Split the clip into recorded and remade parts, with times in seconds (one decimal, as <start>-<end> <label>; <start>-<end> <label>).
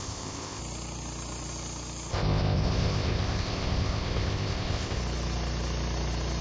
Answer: 0.0-0.6 remade; 0.6-2.1 recorded; 2.1-5.0 remade; 5.0-6.4 recorded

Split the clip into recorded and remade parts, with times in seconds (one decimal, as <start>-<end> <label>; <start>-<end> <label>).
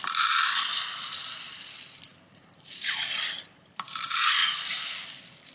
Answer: 0.0-5.5 remade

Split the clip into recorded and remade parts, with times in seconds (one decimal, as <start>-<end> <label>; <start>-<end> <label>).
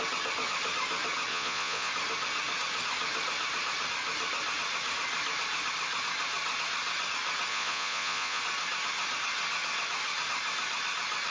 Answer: 0.0-1.3 recorded; 1.3-1.9 remade; 1.9-7.5 recorded; 7.5-8.4 remade; 8.4-11.3 recorded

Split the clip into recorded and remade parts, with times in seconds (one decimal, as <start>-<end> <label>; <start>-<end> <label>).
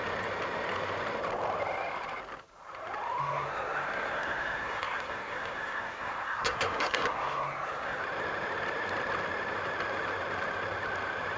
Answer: 0.0-3.2 recorded; 3.2-8.0 remade; 8.0-11.4 recorded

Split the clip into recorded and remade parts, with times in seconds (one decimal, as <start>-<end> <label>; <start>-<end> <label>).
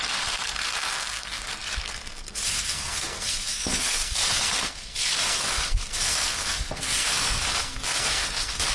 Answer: 0.0-8.7 remade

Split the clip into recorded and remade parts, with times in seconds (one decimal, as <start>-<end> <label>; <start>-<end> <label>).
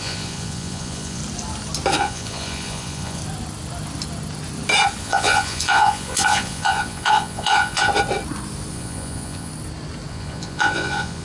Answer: 0.0-1.2 remade; 1.2-2.0 recorded; 2.0-3.2 remade; 3.2-5.0 recorded; 5.0-7.9 remade; 7.9-8.7 recorded; 8.7-9.5 remade; 9.5-10.1 recorded; 10.1-11.2 remade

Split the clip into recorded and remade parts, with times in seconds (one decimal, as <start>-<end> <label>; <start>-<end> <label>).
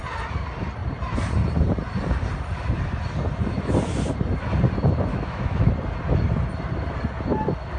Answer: 0.0-5.1 recorded; 5.1-5.7 remade; 5.7-7.8 recorded